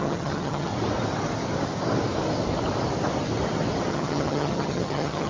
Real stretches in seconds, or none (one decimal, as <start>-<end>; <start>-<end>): 0.7-3.9